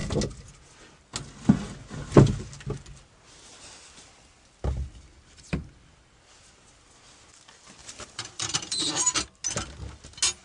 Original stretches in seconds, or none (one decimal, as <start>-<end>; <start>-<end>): 0.0-7.8; 9.0-10.4